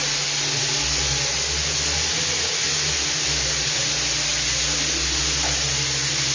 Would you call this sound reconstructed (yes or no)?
no